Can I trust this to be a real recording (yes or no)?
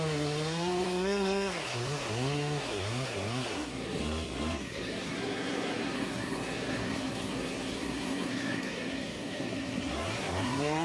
no